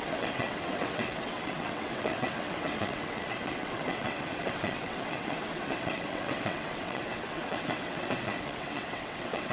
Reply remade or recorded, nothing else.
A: remade